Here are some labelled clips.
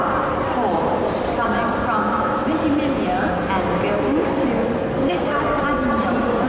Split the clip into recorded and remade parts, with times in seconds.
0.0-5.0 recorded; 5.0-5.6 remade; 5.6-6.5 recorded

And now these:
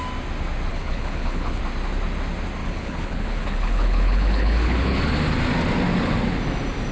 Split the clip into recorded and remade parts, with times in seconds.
0.0-0.7 recorded; 0.7-1.6 remade; 1.6-2.6 recorded; 2.6-5.0 remade; 5.0-6.9 recorded

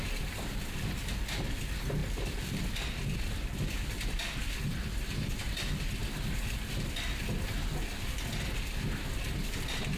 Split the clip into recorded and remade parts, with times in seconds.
0.0-2.0 recorded; 2.0-4.6 remade; 4.6-10.0 recorded

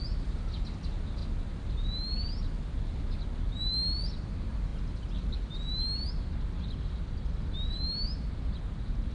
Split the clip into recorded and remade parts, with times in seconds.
0.0-9.1 recorded

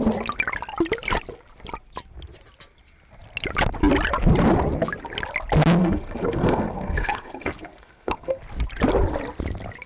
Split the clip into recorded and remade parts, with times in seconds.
0.0-5.8 recorded; 5.8-8.4 remade; 8.4-9.9 recorded

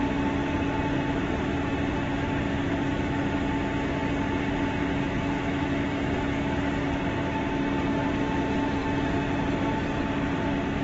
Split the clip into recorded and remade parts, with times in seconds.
0.0-2.6 recorded; 2.6-3.2 remade; 3.2-4.8 recorded; 4.8-7.0 remade; 7.0-10.8 recorded